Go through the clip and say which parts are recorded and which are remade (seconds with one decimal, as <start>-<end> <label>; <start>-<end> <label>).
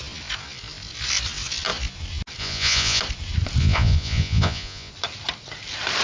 0.0-2.4 recorded; 2.4-3.0 remade; 3.0-3.6 recorded; 3.6-4.9 remade; 4.9-6.0 recorded